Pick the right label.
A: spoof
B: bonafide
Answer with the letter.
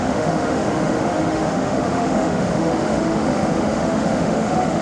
A